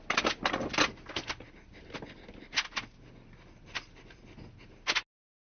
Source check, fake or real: real